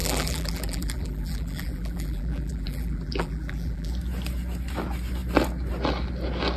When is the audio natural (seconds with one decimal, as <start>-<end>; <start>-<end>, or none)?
3.9-6.6